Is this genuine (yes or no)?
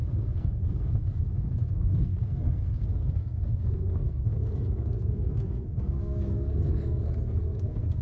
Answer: no